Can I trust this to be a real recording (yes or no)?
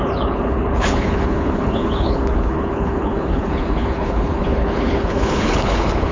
no